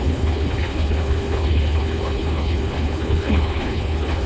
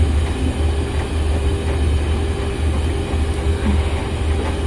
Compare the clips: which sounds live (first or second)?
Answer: second